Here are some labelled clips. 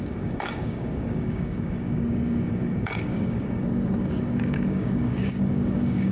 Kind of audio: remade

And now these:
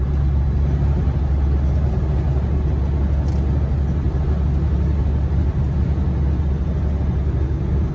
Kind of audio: recorded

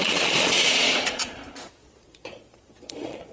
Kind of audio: remade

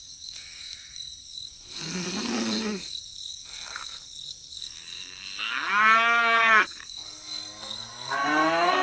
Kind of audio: remade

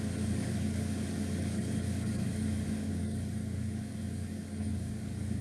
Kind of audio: remade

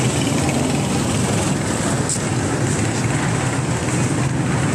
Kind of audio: recorded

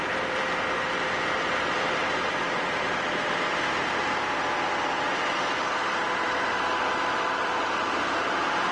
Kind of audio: remade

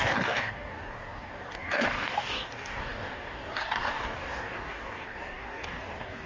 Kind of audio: remade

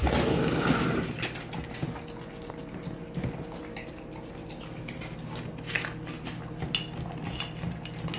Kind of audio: recorded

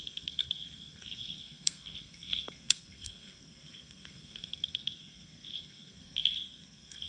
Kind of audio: remade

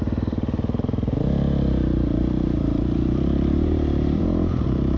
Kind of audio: remade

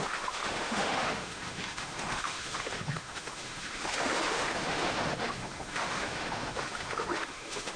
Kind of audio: remade